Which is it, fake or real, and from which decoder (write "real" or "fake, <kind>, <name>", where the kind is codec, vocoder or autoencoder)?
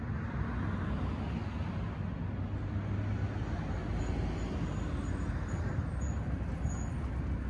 real